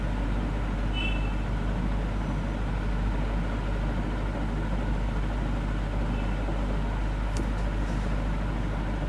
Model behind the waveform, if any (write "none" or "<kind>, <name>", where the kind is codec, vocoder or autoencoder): none